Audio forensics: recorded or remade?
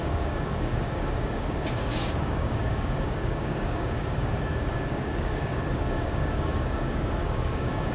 remade